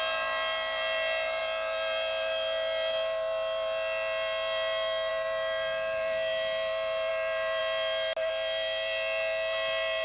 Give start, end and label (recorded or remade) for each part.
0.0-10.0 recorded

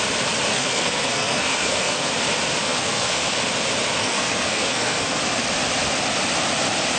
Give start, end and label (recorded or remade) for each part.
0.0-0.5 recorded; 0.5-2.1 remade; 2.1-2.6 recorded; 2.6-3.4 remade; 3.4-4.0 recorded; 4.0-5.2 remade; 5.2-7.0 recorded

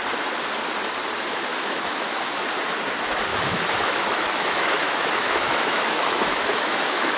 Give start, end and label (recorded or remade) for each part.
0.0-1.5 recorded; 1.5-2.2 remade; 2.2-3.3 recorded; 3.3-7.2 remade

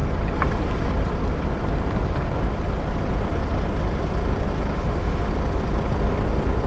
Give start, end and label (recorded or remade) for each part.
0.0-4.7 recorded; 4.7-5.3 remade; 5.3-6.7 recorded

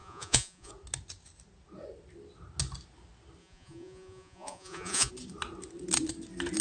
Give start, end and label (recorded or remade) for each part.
0.0-0.7 remade; 0.7-3.4 recorded; 3.4-5.1 remade; 5.1-6.6 recorded

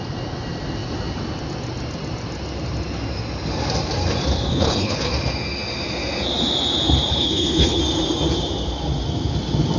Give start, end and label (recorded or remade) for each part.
0.0-4.5 recorded; 4.5-5.1 remade; 5.1-7.1 recorded; 7.1-7.8 remade; 7.8-9.8 recorded

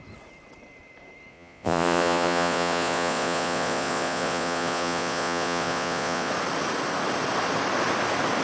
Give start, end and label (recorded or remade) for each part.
0.0-1.3 recorded; 1.3-6.3 remade; 6.3-8.4 recorded

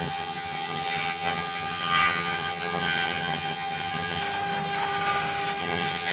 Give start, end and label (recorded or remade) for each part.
0.0-4.2 remade; 4.2-5.6 recorded; 5.6-6.1 remade